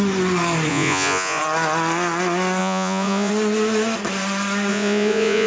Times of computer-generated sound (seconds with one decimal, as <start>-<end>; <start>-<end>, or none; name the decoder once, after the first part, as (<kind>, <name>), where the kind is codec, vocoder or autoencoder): 0.7-1.4 (vocoder, Vocos); 2.6-3.3; 4.7-5.5